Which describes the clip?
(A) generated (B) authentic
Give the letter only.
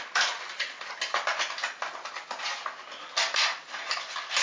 B